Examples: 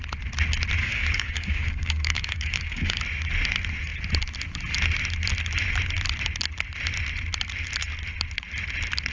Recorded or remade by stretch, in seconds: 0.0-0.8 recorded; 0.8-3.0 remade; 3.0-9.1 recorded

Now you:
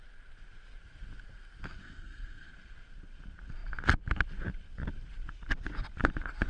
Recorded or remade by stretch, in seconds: 0.0-1.8 recorded; 1.8-2.5 remade; 2.5-6.5 recorded

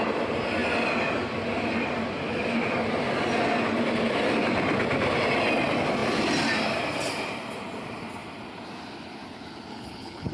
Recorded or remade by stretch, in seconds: 0.0-9.7 recorded; 9.7-10.3 remade

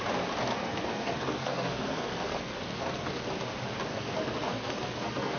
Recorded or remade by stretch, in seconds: 0.0-0.5 recorded; 0.5-3.2 remade; 3.2-3.9 recorded; 3.9-5.4 remade

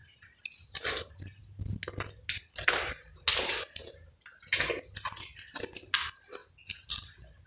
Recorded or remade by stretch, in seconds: 0.0-7.5 recorded

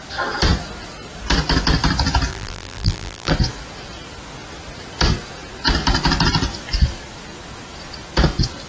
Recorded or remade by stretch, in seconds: 0.0-2.3 recorded; 2.3-3.3 remade; 3.3-8.7 recorded

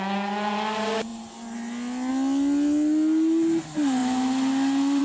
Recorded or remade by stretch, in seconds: 0.0-5.0 recorded

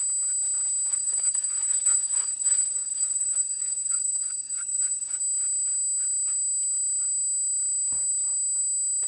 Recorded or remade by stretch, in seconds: 0.0-0.9 recorded; 0.9-5.2 remade; 5.2-9.1 recorded